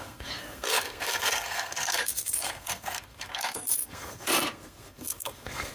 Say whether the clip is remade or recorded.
remade